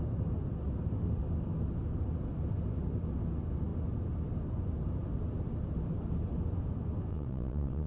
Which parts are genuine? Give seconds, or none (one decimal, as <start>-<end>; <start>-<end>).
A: 0.0-7.1